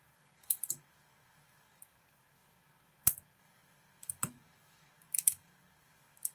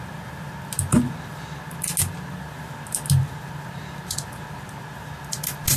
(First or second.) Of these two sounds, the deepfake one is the first